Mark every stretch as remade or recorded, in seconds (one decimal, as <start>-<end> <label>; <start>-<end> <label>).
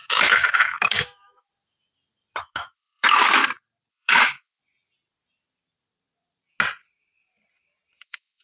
0.0-1.5 remade; 1.5-2.4 recorded; 2.4-3.4 remade; 3.4-3.9 recorded; 3.9-4.6 remade; 4.6-8.0 recorded; 8.0-8.4 remade